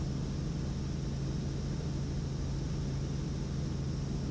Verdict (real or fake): real